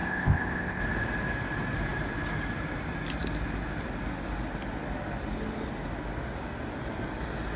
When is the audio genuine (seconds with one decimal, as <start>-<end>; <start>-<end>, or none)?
0.8-7.6